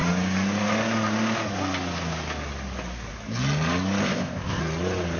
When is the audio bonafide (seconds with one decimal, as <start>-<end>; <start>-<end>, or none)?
0.0-4.0; 4.6-5.2